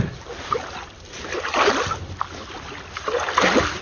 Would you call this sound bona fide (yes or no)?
yes